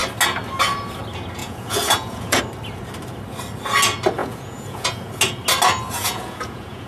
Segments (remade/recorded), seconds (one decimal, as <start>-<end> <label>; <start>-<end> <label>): 0.0-1.4 recorded; 1.4-2.4 remade; 2.4-4.2 recorded; 4.2-5.1 remade; 5.1-6.0 recorded; 6.0-6.9 remade